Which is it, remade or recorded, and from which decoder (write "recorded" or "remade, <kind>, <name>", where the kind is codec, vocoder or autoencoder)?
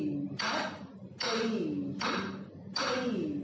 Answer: recorded